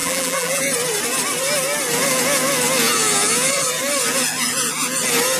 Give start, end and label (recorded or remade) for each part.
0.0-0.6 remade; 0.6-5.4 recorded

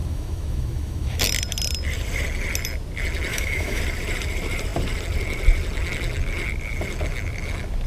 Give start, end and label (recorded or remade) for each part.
0.0-1.2 remade; 1.2-3.3 recorded; 3.3-3.8 remade; 3.8-7.9 recorded

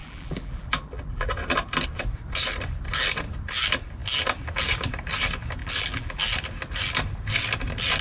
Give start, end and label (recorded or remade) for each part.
0.0-1.3 remade; 1.3-5.6 recorded; 5.6-6.2 remade; 6.2-8.0 recorded